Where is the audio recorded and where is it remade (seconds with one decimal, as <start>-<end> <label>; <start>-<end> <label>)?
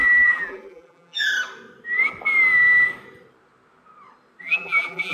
0.0-1.3 remade; 1.3-4.4 recorded; 4.4-5.1 remade